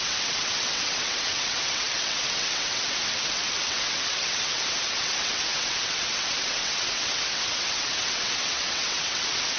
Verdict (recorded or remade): remade